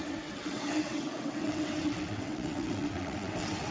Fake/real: fake